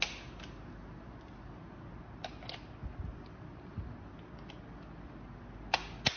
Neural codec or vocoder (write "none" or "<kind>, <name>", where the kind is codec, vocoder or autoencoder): none